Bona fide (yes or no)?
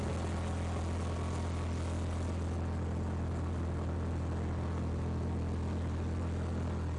yes